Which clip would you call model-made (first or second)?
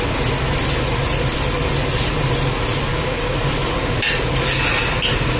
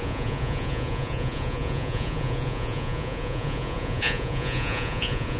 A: second